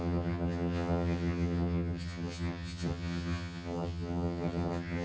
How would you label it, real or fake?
fake